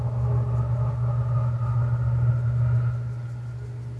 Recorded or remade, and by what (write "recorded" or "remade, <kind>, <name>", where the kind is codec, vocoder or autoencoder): recorded